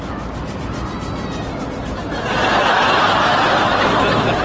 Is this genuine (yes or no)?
yes